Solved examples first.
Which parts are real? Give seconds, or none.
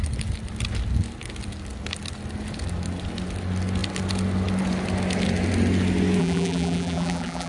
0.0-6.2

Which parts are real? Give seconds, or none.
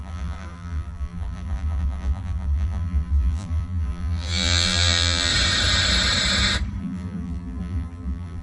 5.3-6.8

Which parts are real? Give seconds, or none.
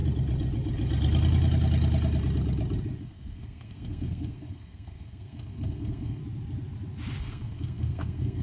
0.0-3.0; 6.2-7.2